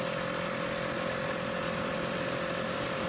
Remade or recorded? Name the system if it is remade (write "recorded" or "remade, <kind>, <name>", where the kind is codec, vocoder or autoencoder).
recorded